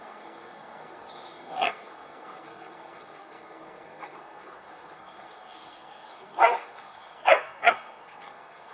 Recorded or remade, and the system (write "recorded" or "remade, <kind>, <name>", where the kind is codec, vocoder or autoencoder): remade, codec, SNAC